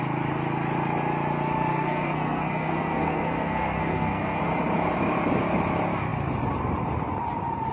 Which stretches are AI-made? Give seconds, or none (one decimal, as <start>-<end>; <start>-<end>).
1.7-4.4